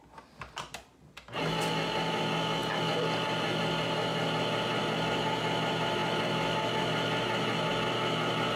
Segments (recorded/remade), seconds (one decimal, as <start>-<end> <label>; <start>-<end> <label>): 0.0-8.6 recorded